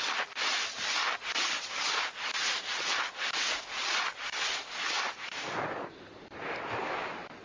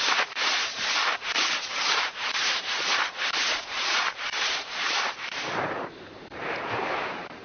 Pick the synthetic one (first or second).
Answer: second